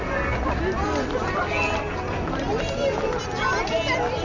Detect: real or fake real